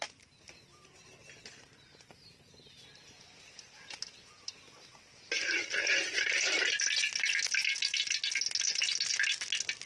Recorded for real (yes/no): yes